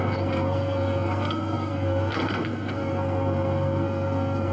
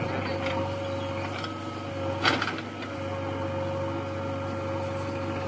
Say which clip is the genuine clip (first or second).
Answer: second